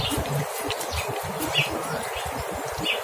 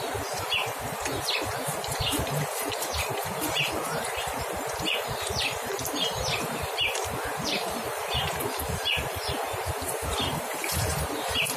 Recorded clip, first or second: first